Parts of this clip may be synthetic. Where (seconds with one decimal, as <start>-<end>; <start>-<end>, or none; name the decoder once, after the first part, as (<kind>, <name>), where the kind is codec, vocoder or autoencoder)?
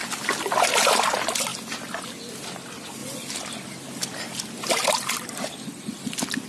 1.1-1.5 (vocoder, BigVGAN v2); 2.3-3.0; 4.7-6.5